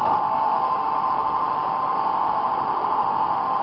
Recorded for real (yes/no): no